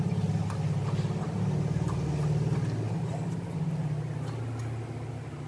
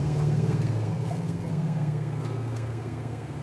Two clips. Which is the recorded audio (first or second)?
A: first